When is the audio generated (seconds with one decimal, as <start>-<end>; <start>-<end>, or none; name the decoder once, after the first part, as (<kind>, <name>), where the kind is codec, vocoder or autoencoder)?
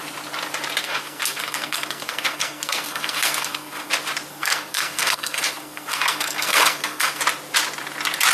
0.8-3.9 (codec, SNAC); 4.3-7.2